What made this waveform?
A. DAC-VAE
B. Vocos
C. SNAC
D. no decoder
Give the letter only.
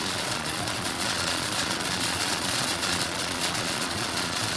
B